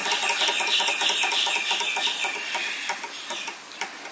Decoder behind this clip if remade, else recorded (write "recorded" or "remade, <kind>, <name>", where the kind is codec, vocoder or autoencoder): recorded